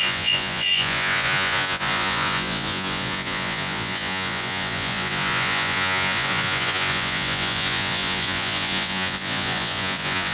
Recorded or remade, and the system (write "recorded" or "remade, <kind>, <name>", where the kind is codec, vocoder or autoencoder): remade, vocoder, Vocos